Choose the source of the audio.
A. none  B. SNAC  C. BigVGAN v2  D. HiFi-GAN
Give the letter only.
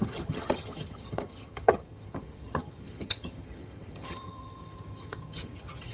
D